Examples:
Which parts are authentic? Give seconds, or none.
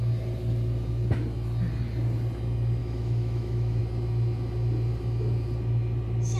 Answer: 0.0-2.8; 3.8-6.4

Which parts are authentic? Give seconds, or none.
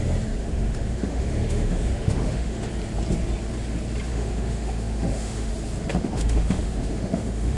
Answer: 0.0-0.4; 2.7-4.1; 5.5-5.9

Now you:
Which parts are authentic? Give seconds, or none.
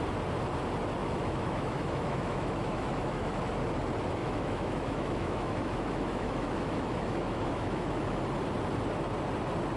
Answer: 0.0-1.0; 3.3-4.2; 8.2-9.8